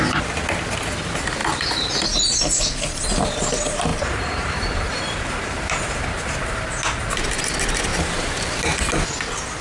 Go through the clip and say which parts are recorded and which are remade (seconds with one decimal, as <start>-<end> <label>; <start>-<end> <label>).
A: 0.0-3.9 recorded; 3.9-6.7 remade; 6.7-7.9 recorded; 7.9-8.5 remade; 8.5-9.6 recorded